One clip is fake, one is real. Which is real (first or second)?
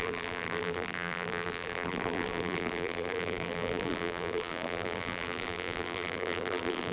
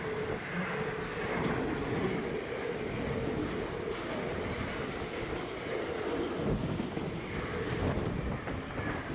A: second